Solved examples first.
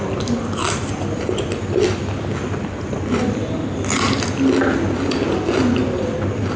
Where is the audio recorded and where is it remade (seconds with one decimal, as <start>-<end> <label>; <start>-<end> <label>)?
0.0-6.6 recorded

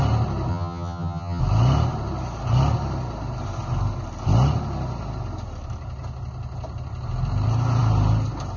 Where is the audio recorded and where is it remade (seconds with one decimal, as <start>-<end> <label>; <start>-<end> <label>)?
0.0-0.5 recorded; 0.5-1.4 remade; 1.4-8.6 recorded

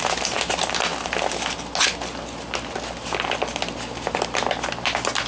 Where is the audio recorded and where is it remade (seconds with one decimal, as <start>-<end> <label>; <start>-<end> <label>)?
0.0-5.3 recorded

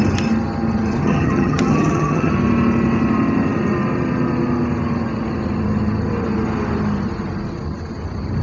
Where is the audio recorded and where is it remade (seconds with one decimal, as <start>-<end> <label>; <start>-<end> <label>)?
0.0-1.0 recorded; 1.0-2.3 remade; 2.3-8.4 recorded

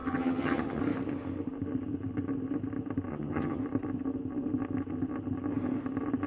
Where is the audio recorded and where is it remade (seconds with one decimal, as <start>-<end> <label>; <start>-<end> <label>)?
0.0-0.8 remade; 0.8-3.1 recorded; 3.1-3.6 remade; 3.6-6.3 recorded